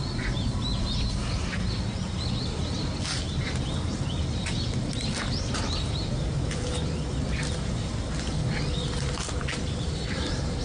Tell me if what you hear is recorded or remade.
recorded